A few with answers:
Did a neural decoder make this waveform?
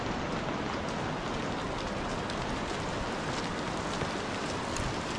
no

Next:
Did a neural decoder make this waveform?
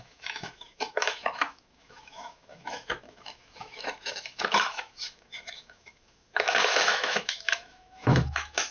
yes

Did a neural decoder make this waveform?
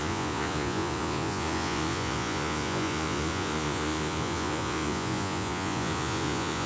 yes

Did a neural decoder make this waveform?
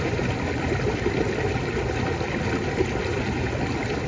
no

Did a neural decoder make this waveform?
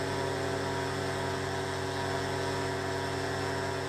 no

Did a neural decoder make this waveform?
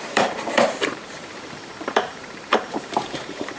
yes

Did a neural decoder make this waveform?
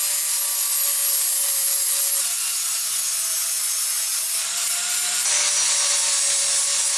no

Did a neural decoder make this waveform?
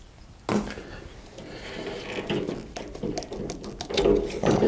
no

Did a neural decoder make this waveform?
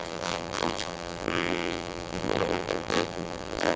yes